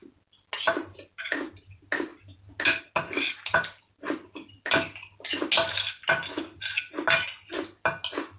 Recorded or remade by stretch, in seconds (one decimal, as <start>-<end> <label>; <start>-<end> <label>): 0.0-8.4 recorded

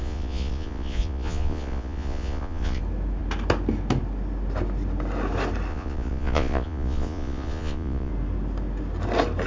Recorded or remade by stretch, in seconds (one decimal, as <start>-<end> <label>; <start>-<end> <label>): 0.0-2.8 remade; 2.8-5.7 recorded; 5.7-8.1 remade; 8.1-9.5 recorded

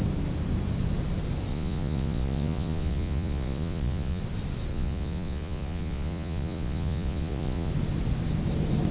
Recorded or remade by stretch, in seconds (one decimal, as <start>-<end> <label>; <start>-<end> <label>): 0.0-1.5 recorded; 1.5-4.2 remade; 4.2-4.7 recorded; 4.7-7.7 remade; 7.7-8.9 recorded

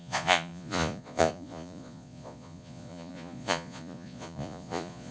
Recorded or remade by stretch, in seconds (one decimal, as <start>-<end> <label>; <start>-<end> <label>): 0.0-5.1 remade